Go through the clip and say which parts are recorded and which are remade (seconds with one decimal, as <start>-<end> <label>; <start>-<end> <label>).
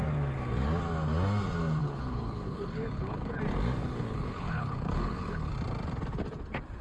0.0-1.8 recorded; 1.8-3.4 remade; 3.4-3.8 recorded; 3.8-5.5 remade; 5.5-6.8 recorded